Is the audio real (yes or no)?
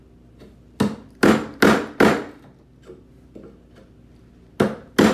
yes